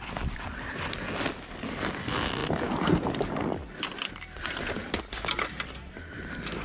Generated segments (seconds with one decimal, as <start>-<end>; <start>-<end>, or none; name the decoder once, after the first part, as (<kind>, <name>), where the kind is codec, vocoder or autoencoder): none